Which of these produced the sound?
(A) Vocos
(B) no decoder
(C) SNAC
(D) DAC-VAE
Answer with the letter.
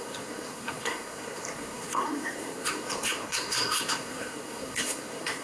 C